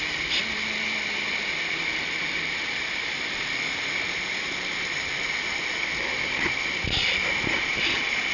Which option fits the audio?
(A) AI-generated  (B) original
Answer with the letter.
B